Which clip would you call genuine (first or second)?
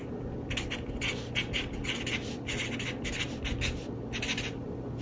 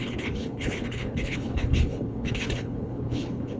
first